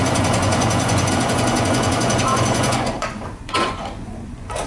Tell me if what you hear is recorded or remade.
remade